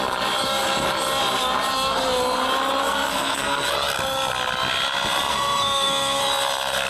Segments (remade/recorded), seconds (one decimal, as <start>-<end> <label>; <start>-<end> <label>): 0.0-2.8 recorded; 2.8-3.7 remade; 3.7-5.3 recorded; 5.3-6.2 remade; 6.2-6.9 recorded